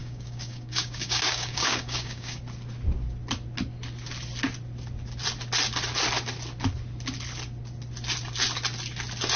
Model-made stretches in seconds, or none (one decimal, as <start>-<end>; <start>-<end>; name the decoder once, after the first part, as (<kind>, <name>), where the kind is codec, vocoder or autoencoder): 0.0-2.4 (codec, DAC)

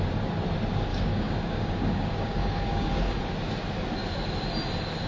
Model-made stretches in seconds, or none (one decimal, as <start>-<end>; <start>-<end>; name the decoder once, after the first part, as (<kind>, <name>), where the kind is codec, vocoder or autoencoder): 0.9-3.2 (codec, DAC)

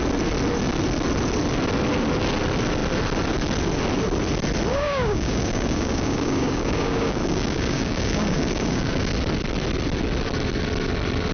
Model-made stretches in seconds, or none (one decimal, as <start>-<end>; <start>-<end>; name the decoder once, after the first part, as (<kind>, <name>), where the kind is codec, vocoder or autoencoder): 4.7-9.1 (codec, DAC)

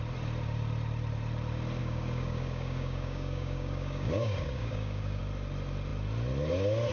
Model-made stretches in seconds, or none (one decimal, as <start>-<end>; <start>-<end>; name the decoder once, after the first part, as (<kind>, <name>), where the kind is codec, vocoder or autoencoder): 1.8-5.2 (codec, DAC)

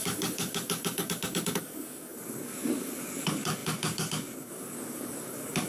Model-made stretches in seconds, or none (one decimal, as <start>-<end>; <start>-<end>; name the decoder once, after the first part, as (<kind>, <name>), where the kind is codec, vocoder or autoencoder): 0.0-5.7 (codec, DAC)

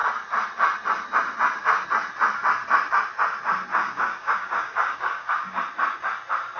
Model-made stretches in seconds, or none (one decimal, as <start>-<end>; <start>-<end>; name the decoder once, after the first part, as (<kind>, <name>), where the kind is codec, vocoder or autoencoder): 3.7-5.6 (codec, DAC)